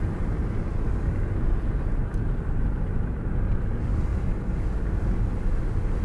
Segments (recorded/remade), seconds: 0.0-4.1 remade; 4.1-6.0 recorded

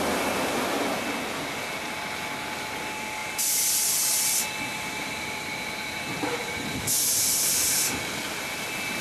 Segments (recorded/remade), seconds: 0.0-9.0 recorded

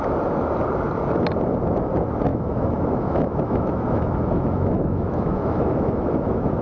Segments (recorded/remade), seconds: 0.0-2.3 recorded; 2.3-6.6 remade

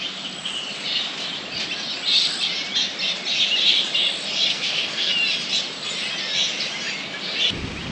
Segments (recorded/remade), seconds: 0.0-4.5 recorded; 4.5-5.1 remade; 5.1-7.9 recorded

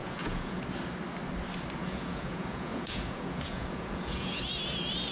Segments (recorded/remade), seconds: 0.0-0.6 remade; 0.6-1.8 recorded; 1.8-4.4 remade; 4.4-5.1 recorded